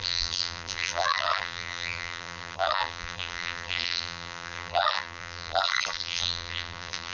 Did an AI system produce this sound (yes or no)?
yes